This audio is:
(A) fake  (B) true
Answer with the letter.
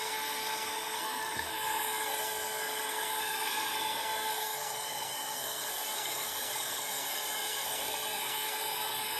A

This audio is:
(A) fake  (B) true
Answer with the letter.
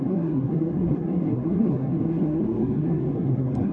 A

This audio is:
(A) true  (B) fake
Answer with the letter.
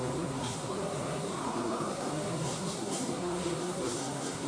B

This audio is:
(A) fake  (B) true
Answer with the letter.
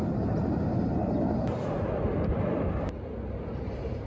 B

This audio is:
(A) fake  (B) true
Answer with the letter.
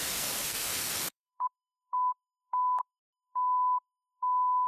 A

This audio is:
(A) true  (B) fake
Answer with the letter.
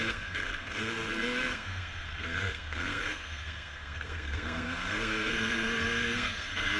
B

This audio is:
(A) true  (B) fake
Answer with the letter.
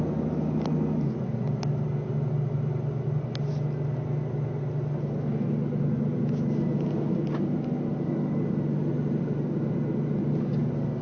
A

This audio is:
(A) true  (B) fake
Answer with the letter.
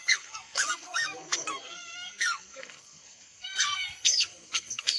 B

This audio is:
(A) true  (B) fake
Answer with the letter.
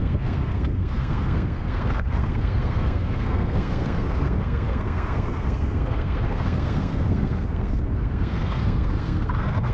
B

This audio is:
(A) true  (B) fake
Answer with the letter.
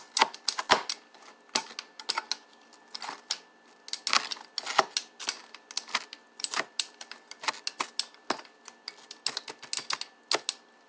A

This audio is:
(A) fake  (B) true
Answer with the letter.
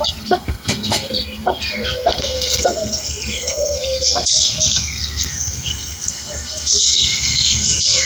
A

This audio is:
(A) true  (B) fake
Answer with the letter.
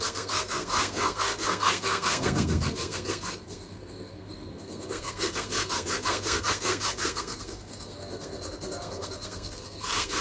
B